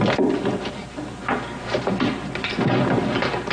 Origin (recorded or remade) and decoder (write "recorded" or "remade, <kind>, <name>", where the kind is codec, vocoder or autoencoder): recorded